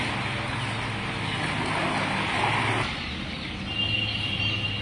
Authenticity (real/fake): real